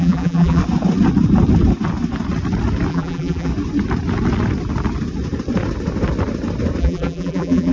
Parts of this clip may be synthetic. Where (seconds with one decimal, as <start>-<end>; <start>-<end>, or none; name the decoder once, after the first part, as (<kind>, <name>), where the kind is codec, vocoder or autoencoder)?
0.0-0.6 (vocoder, BigVGAN v2); 2.9-3.5; 6.8-7.7